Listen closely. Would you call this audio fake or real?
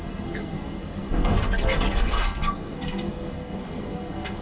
fake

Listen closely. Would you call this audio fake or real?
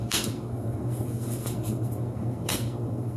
fake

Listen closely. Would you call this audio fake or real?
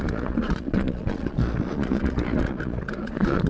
fake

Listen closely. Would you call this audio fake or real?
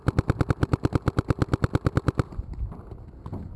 real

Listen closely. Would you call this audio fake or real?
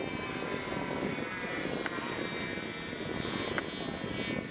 real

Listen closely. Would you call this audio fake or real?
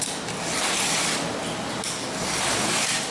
real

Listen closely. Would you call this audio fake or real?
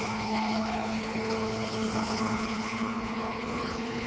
fake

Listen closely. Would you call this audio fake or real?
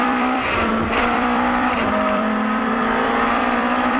fake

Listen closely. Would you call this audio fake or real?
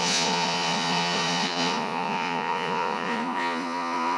fake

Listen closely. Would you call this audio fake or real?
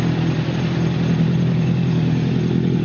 real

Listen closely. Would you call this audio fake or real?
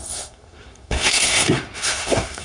fake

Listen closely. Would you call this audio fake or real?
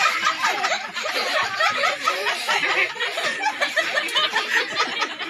real